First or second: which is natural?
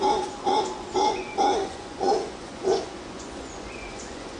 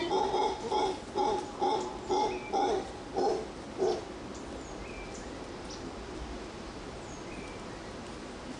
second